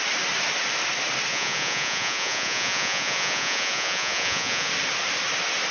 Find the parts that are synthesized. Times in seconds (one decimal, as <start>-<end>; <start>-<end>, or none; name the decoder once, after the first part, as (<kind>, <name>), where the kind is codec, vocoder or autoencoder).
1.3-4.7 (vocoder, Vocos)